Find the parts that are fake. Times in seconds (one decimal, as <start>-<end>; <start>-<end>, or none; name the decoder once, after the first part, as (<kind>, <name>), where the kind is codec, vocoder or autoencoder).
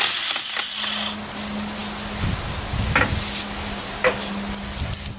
none